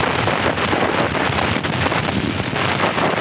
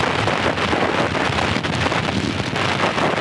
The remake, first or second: first